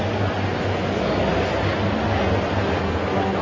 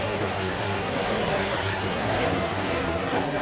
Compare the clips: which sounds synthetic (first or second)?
second